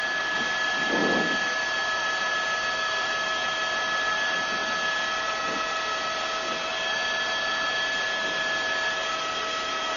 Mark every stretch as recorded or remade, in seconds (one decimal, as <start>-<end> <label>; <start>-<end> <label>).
0.0-10.0 recorded